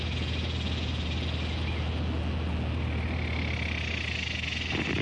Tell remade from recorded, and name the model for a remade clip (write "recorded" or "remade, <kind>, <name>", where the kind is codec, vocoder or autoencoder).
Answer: recorded